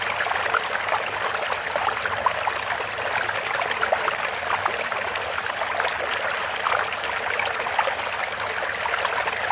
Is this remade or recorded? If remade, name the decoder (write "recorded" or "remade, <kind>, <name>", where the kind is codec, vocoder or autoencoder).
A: recorded